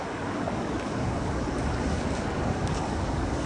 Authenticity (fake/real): fake